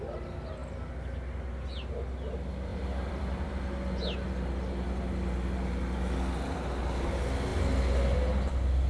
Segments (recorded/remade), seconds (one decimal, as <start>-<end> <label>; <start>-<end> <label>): 0.0-2.7 recorded; 2.7-3.5 remade; 3.5-8.9 recorded